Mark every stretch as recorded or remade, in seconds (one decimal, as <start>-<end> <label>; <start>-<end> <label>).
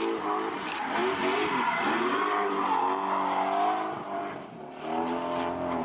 0.0-5.8 recorded